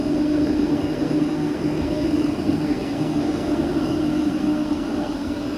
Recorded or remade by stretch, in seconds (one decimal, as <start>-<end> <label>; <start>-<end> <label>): 0.0-5.6 remade